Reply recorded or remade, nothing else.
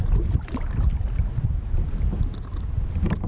recorded